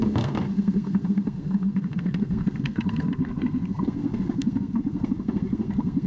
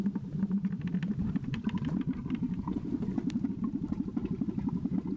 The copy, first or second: first